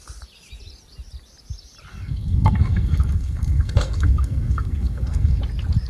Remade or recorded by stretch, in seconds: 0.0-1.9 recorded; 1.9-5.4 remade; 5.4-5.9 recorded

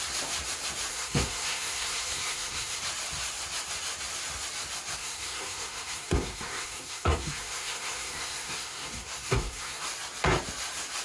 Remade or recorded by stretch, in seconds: 0.0-0.9 recorded; 0.9-2.8 remade; 2.8-5.0 recorded; 5.0-9.8 remade; 9.8-11.0 recorded

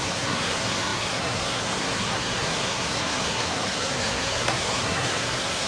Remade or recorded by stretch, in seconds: 0.0-5.7 remade

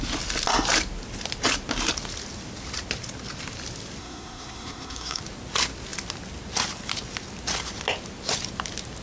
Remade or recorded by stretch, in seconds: 0.0-4.0 recorded; 4.0-5.2 remade; 5.2-9.0 recorded

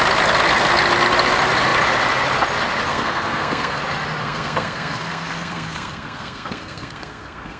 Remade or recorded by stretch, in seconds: 0.0-2.9 recorded; 2.9-3.8 remade; 3.8-4.2 recorded; 4.2-7.6 remade